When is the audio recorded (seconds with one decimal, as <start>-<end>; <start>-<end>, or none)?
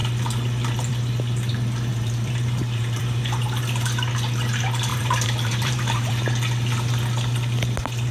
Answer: 0.0-1.9; 3.0-4.9; 6.1-8.1